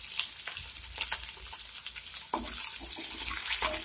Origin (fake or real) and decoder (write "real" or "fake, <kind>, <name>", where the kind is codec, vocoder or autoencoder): real